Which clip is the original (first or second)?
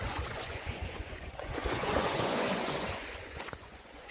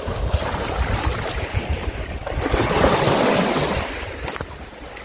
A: second